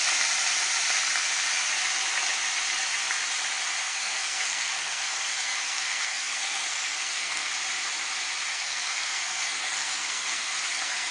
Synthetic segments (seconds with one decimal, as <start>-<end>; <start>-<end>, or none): 3.8-7.5; 8.5-11.1